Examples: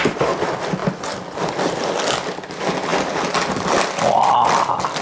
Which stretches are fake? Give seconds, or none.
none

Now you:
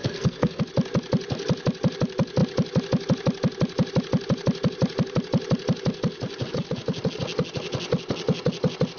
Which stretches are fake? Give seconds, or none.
0.0-0.6 (codec, SNAC)

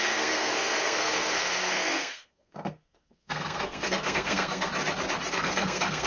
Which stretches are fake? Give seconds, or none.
0.0-4.7 (codec, SNAC); 5.3-6.1

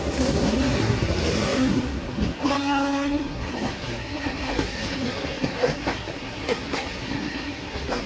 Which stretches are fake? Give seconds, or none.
0.0-8.1 (codec, SNAC)

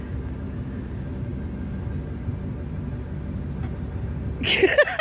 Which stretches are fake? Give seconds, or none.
none

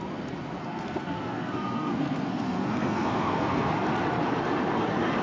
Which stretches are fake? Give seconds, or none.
0.6-3.7 (codec, SNAC)

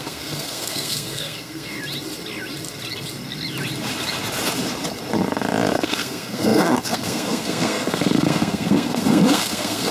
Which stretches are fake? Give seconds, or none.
0.0-1.7 (codec, SNAC); 5.7-9.9

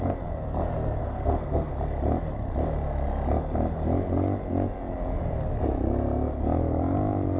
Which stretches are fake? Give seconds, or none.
1.0-1.7 (codec, SNAC)